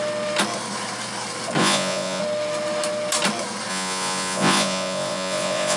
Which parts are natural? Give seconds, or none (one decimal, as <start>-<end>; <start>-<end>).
0.0-1.6; 2.2-3.7